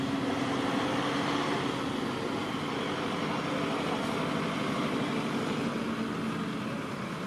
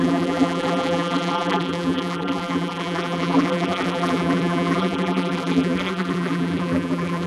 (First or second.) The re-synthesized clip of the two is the second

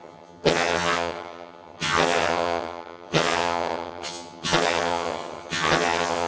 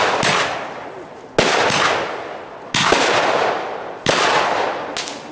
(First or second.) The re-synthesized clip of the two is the first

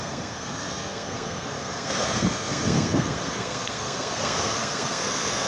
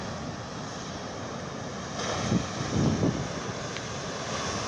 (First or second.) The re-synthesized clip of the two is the first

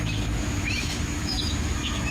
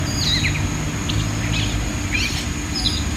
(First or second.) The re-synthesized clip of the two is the first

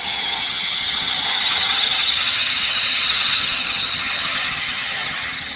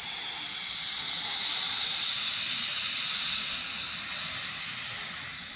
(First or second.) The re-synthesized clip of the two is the first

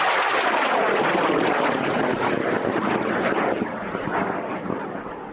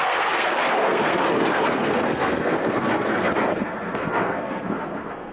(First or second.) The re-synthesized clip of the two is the second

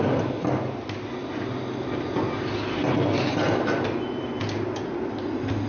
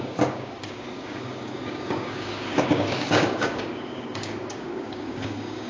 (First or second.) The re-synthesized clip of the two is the second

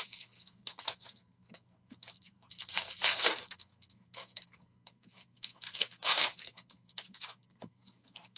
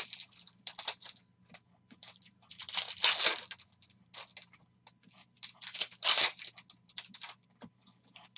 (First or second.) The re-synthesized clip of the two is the first